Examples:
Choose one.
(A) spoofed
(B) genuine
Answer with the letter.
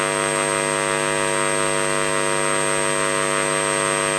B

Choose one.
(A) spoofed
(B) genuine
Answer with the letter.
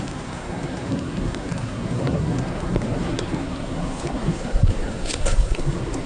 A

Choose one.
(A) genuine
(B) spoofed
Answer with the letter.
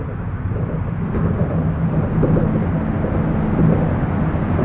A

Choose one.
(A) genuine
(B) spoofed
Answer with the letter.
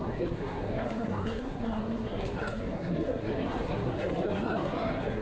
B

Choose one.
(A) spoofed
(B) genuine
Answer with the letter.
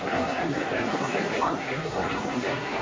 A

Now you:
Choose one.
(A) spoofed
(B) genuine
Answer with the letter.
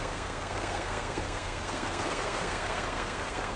A